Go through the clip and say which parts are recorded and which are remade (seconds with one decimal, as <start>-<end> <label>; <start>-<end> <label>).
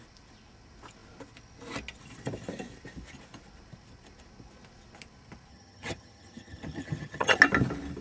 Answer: 0.0-5.5 recorded; 5.5-7.4 remade; 7.4-8.0 recorded